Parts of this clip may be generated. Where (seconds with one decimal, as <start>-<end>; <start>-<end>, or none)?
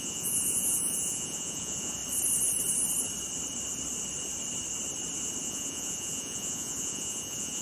0.0-2.0; 5.4-7.6